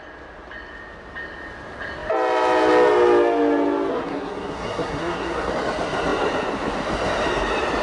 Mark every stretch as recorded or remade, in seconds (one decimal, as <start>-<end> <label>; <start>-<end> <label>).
0.0-3.9 recorded; 3.9-5.5 remade; 5.5-7.8 recorded